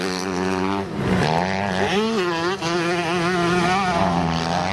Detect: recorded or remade recorded